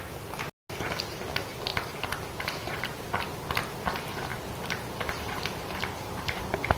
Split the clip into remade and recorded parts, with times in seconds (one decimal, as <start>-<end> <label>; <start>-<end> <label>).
0.0-4.3 recorded; 4.3-6.8 remade